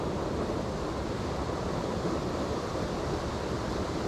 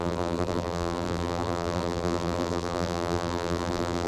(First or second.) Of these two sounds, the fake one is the second